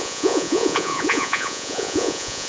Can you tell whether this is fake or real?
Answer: fake